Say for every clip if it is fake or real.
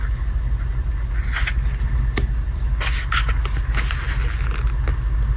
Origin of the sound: real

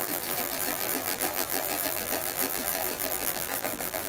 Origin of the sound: fake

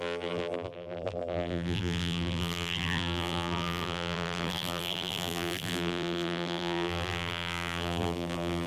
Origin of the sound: fake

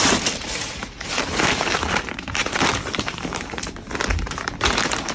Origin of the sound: fake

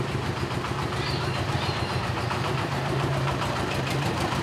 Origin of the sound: fake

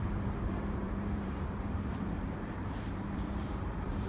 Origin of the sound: fake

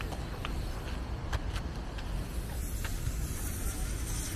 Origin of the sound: real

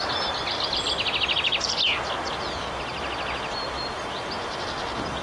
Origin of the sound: real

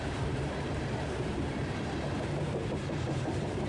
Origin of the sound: fake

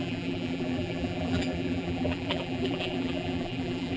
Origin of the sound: fake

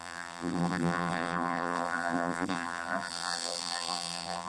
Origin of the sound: fake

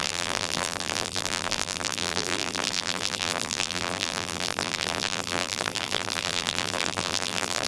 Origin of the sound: fake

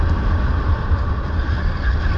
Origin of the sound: fake